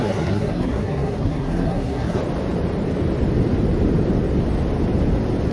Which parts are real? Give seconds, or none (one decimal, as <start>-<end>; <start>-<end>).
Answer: 2.2-5.5